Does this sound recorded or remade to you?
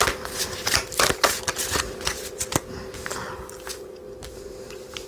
recorded